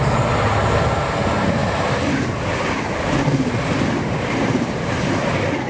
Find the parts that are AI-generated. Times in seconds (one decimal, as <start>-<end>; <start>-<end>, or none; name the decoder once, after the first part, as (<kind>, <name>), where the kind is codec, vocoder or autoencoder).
none